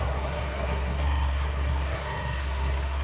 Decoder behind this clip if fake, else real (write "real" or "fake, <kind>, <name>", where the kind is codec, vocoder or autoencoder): fake, codec, SNAC